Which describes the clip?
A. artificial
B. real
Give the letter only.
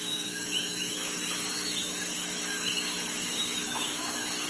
A